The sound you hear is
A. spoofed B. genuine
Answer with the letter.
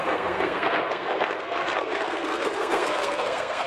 A